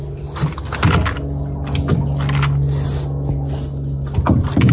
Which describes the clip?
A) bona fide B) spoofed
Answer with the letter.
A